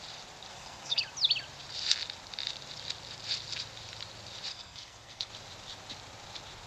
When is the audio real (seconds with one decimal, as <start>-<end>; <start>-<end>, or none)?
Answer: 0.0-0.5; 1.0-4.5; 5.3-6.7